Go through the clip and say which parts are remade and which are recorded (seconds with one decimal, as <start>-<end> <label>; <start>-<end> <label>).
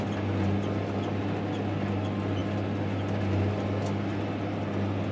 0.0-5.1 recorded